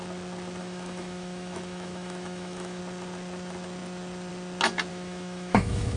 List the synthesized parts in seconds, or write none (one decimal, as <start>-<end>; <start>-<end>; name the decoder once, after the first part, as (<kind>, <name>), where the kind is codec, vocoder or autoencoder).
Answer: 0.6-2.8 (autoencoder, DAC-VAE); 4.9-6.0

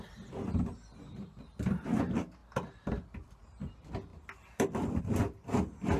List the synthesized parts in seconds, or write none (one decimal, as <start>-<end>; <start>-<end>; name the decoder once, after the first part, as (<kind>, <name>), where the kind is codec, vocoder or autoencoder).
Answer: none

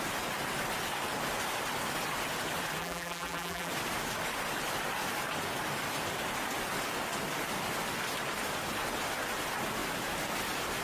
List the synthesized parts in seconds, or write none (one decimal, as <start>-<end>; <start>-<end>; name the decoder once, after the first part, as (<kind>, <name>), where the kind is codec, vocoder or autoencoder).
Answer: 2.8-3.7 (vocoder, BigVGAN v2)

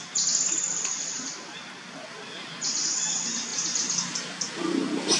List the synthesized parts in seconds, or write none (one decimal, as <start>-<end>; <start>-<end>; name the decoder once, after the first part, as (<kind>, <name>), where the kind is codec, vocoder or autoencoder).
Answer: none

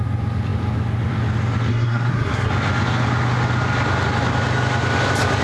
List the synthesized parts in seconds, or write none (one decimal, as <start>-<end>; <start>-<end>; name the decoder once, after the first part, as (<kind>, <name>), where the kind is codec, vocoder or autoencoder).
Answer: 1.7-2.5 (codec, SNAC)

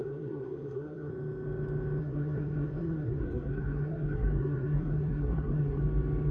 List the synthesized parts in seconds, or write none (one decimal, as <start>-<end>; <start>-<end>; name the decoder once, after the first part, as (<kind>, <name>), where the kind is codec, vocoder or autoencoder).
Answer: 0.0-1.1 (codec, SNAC); 2.0-5.8

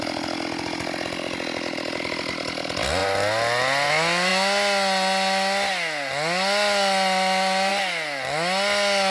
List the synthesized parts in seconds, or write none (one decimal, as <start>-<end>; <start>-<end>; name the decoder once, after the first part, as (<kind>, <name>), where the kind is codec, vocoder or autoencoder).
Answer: none

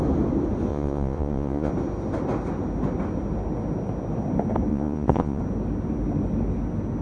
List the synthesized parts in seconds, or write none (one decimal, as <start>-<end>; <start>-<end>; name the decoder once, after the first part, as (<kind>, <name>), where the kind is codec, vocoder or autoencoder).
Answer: 0.7-1.7 (vocoder, Vocos); 4.7-5.4